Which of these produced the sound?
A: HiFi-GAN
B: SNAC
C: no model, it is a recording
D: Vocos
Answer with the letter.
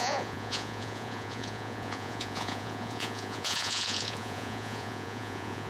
D